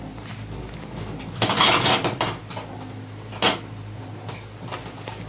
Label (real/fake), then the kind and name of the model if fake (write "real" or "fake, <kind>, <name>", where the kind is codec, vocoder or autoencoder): real